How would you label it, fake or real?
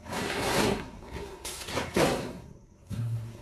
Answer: fake